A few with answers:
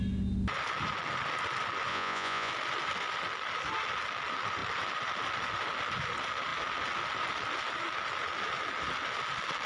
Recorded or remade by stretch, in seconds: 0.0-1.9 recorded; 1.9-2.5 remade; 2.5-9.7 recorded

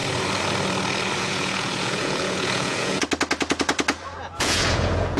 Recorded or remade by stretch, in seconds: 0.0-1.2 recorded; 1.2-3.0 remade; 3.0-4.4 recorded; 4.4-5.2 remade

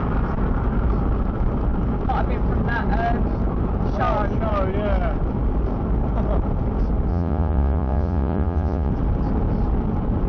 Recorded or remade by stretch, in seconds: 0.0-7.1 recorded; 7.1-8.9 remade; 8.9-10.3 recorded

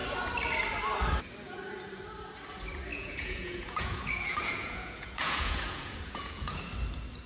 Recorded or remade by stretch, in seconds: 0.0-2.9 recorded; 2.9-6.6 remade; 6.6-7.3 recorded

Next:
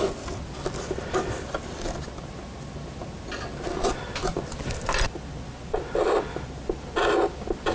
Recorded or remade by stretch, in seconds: 0.0-7.7 recorded

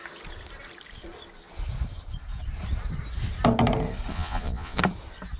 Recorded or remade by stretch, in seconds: 0.0-4.1 recorded; 4.1-4.8 remade; 4.8-5.4 recorded